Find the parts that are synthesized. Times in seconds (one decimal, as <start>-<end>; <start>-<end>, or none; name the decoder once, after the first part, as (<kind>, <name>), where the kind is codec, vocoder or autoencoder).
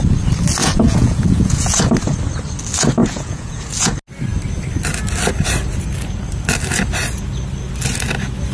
0.6-1.9 (vocoder, Vocos); 3.0-3.9